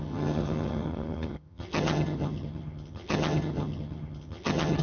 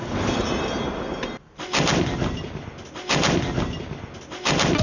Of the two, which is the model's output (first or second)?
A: first